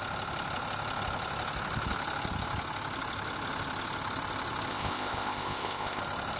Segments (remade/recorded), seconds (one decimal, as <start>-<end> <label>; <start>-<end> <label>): 0.0-4.7 recorded; 4.7-6.0 remade; 6.0-6.4 recorded